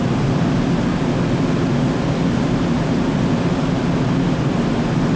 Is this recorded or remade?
recorded